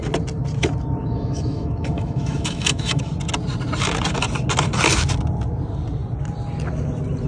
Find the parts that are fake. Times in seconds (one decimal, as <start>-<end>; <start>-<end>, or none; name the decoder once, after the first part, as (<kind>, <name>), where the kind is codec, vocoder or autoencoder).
1.0-3.1 (autoencoder, DAC-VAE)